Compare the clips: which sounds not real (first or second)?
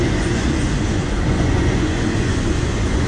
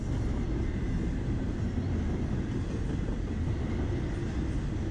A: first